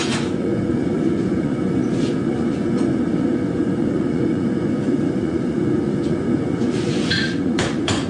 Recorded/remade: remade